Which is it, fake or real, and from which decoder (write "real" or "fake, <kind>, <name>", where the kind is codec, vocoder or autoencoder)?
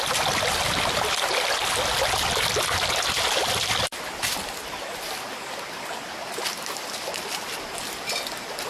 real